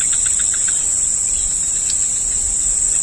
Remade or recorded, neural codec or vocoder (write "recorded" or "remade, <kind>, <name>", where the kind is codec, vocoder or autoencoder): recorded